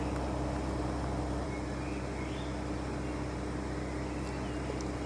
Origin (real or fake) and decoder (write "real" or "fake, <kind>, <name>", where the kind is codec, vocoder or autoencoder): real